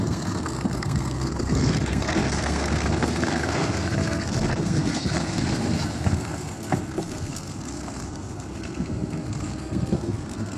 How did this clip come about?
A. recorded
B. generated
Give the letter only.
B